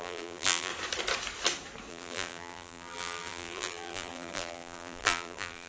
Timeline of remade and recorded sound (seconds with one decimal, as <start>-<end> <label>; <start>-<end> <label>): 0.0-0.7 remade; 0.7-1.9 recorded; 1.9-5.7 remade